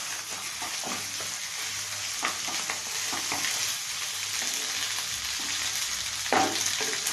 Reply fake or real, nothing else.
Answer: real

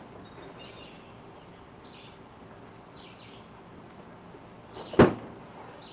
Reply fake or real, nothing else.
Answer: real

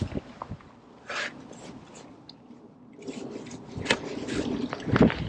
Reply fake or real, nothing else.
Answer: real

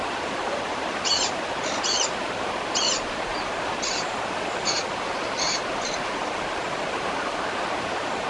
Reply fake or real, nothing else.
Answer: fake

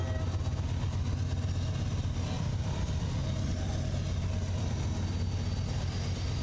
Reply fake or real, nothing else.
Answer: real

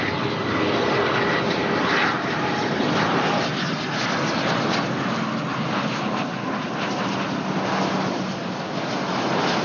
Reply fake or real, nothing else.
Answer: real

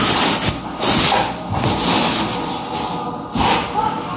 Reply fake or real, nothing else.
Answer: real